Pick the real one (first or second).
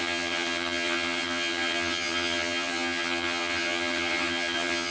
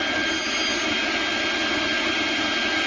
second